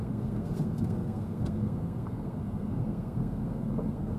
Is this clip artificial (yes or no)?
yes